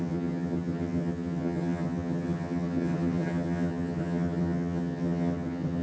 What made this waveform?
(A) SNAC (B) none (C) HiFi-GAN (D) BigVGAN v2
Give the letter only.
C